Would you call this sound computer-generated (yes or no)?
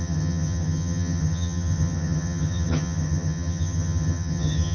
yes